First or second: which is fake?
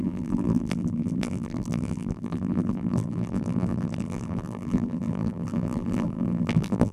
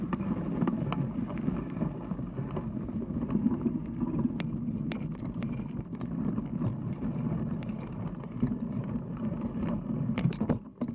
first